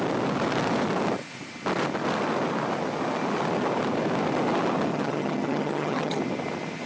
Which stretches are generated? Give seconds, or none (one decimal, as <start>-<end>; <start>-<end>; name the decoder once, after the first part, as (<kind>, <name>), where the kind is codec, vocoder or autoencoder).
4.9-6.2 (vocoder, HiFi-GAN)